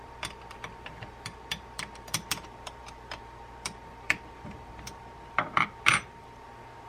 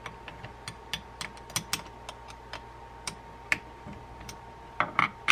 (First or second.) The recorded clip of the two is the second